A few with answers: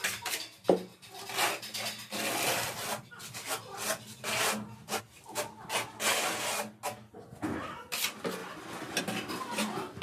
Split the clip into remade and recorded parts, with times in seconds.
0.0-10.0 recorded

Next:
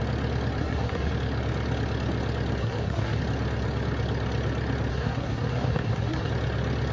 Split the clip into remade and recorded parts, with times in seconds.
0.0-0.6 recorded; 0.6-1.1 remade; 1.1-2.6 recorded; 2.6-3.2 remade; 3.2-4.9 recorded; 4.9-6.3 remade; 6.3-6.9 recorded